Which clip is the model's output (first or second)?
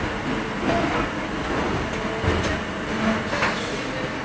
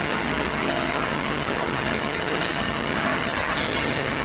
second